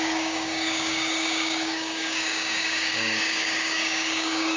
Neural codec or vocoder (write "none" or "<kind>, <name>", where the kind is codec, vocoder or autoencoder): codec, DAC